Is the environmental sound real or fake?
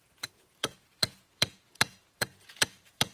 fake